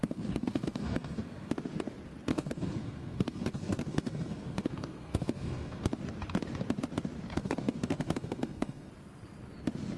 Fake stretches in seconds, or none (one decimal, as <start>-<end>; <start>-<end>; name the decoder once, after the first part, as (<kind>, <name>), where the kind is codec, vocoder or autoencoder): 0.0-1.5 (codec, SNAC); 2.3-6.0; 7.3-8.9